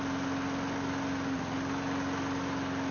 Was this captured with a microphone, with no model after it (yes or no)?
yes